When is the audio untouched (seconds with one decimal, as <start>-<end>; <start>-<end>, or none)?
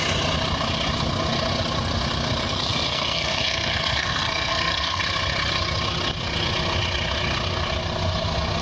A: 0.0-2.4; 5.0-8.6